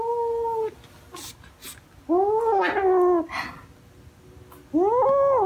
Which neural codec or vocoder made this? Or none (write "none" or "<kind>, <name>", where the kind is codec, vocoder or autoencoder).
none